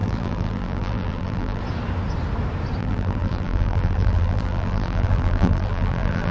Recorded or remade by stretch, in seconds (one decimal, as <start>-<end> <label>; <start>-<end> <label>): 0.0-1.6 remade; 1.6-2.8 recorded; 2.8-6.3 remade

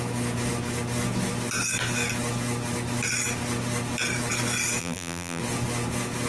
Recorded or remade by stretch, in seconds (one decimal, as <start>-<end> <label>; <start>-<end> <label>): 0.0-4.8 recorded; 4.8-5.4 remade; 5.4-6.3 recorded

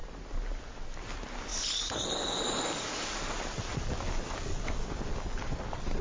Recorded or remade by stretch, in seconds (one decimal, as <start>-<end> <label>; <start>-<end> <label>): 0.0-6.0 recorded

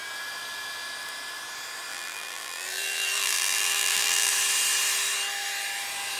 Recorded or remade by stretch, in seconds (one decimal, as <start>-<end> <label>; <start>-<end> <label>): 0.0-1.9 recorded; 1.9-4.3 remade; 4.3-6.2 recorded

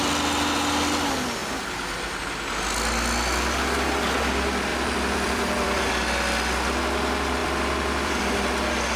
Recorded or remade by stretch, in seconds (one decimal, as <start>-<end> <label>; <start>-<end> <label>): 0.0-4.7 recorded; 4.7-5.9 remade; 5.9-7.4 recorded; 7.4-8.2 remade; 8.2-9.0 recorded

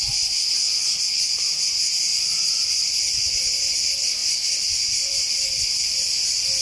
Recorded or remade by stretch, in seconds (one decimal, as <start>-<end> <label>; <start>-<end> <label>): 0.0-2.1 recorded; 2.1-3.0 remade; 3.0-6.6 recorded